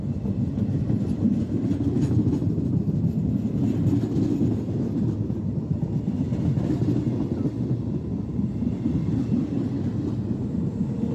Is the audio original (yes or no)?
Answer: yes